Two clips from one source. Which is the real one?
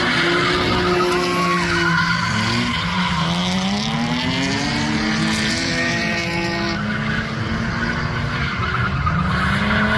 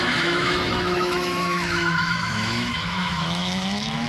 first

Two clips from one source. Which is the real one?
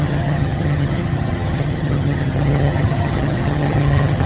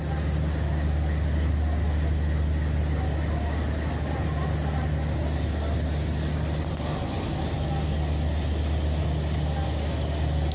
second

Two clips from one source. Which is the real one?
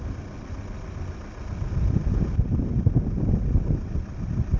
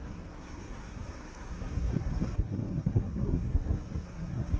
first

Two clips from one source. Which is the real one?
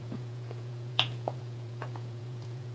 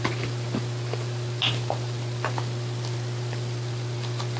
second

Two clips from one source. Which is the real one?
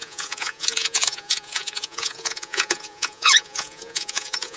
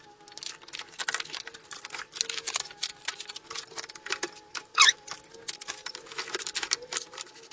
second